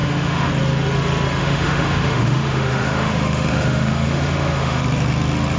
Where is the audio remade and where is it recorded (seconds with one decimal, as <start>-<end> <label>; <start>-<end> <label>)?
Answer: 0.0-0.5 remade; 0.5-1.4 recorded; 1.4-4.8 remade; 4.8-5.6 recorded